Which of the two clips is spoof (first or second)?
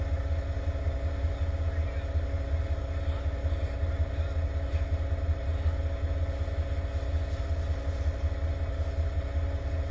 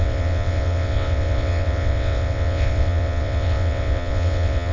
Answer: second